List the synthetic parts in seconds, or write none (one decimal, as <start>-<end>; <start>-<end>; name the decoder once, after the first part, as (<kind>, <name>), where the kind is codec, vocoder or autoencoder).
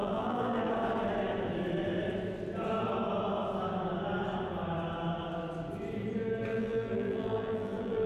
0.0-0.7 (vocoder, BigVGAN v2); 6.5-8.1